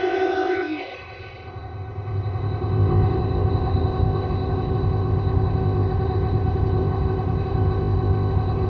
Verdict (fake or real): fake